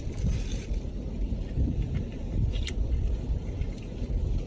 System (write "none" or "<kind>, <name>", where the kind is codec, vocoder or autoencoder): none